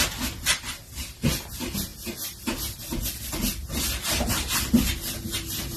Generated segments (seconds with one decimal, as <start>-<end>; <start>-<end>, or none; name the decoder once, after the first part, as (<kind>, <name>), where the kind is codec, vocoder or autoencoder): 3.6-4.4 (vocoder, BigVGAN v2)